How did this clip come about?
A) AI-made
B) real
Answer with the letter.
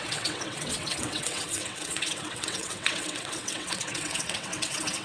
A